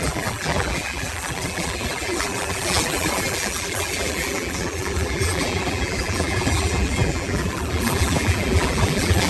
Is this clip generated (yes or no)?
yes